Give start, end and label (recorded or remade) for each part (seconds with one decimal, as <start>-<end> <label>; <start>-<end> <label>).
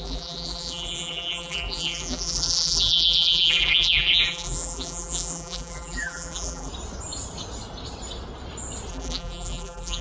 0.0-6.7 remade; 6.7-8.9 recorded; 8.9-10.0 remade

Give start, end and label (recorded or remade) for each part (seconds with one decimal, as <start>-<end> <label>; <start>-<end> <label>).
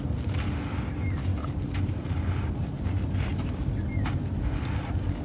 0.0-5.2 recorded